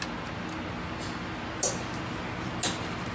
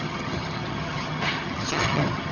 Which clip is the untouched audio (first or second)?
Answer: first